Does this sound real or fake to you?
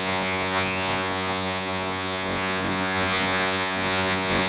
fake